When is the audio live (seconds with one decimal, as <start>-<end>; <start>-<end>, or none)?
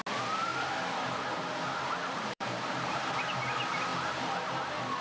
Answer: 0.0-2.0; 3.4-5.0